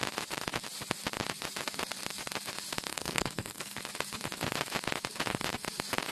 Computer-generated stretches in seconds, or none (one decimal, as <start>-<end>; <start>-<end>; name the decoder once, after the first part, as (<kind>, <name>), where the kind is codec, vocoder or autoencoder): 2.9-3.8 (codec, SNAC)